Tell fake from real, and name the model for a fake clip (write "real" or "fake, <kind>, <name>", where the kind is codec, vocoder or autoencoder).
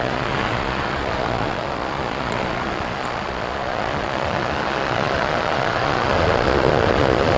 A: fake, vocoder, Vocos